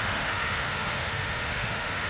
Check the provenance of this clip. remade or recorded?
remade